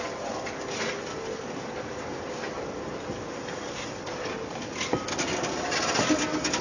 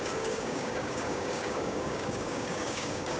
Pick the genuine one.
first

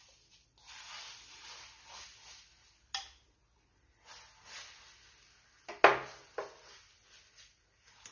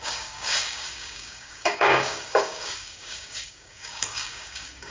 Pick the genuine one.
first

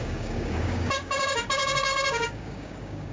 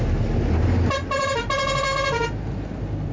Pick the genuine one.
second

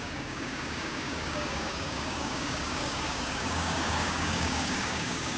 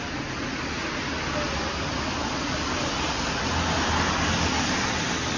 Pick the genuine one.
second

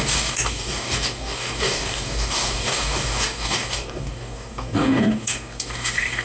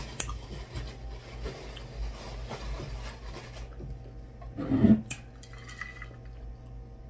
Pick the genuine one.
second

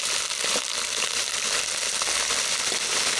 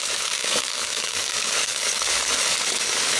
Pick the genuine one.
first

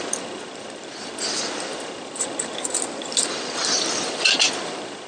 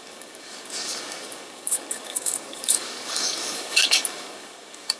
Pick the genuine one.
first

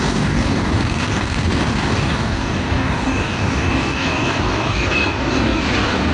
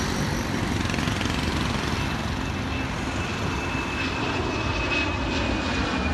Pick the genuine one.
second